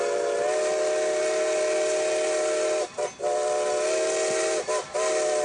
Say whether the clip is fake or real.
real